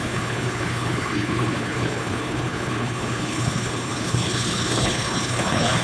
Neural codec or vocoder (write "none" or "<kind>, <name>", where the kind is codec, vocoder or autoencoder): codec, HILCodec